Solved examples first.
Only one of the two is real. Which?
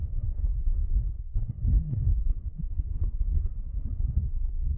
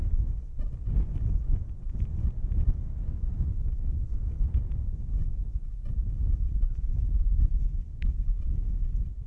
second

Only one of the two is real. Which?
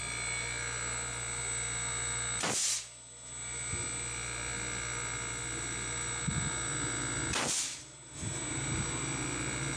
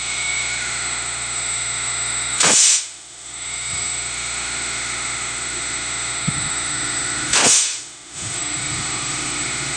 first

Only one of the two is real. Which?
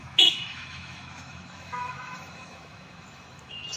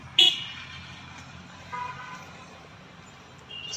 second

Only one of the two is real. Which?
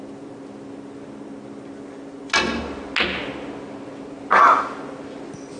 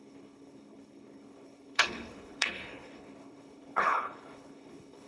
first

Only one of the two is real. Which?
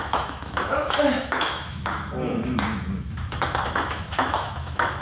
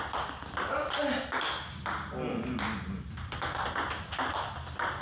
second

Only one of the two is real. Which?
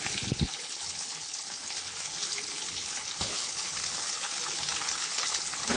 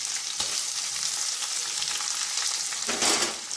second